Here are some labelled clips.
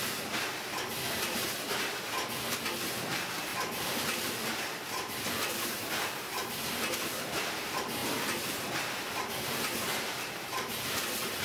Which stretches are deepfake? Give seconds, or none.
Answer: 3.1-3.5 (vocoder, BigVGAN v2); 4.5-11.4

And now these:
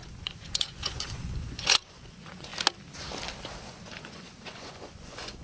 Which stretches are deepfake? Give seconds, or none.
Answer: 0.0-2.5 (vocoder, Vocos); 3.7-5.4

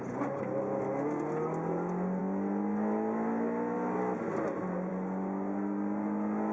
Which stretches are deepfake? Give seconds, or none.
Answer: none